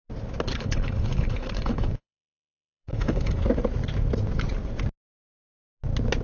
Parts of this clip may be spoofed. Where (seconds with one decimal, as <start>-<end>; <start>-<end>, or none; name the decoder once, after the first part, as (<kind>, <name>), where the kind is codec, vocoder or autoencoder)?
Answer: 0.5-3.4 (codec, HILCodec)